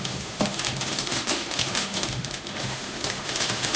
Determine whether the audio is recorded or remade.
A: remade